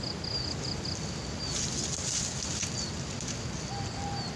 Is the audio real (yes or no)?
yes